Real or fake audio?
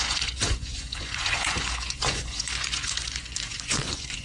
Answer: fake